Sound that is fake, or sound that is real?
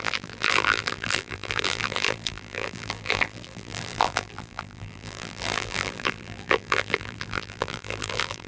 fake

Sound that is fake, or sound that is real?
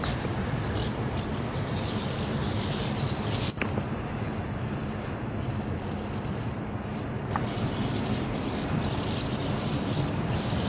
fake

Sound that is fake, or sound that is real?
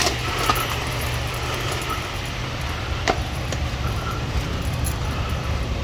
fake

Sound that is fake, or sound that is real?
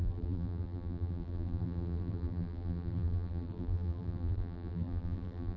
fake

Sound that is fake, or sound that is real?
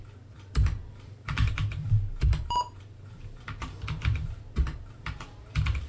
fake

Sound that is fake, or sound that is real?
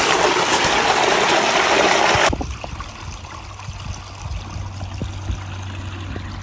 real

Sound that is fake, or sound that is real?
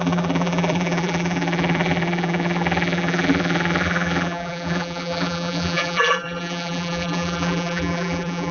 fake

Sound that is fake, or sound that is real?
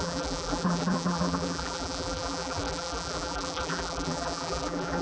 fake